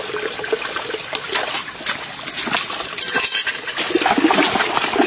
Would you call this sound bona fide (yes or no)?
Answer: yes